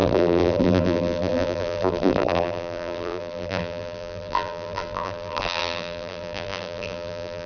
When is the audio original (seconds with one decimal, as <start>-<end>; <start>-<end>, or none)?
none